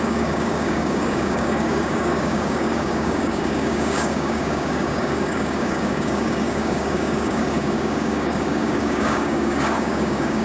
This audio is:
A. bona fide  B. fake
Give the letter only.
B